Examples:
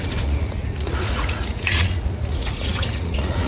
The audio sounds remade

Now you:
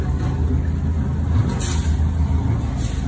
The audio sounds recorded